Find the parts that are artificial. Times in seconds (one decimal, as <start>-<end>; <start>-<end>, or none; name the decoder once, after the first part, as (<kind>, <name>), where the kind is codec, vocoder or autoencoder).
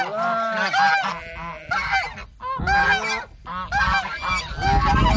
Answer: none